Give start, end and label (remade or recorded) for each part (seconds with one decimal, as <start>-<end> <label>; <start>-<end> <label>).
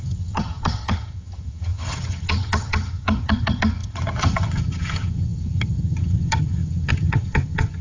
0.0-7.8 remade